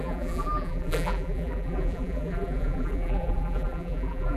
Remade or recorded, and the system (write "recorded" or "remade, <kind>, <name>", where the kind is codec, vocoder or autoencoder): remade, vocoder, BigVGAN v2